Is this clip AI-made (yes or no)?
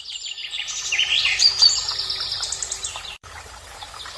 yes